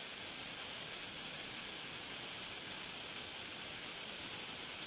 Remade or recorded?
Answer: recorded